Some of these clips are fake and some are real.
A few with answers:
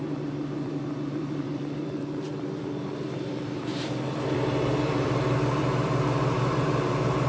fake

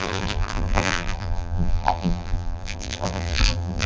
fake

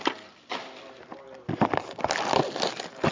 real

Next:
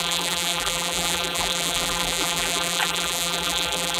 fake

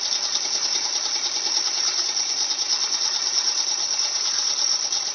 real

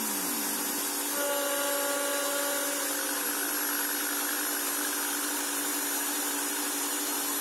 real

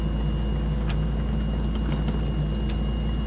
real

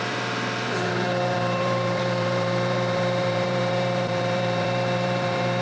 fake